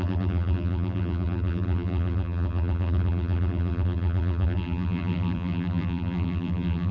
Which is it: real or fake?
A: fake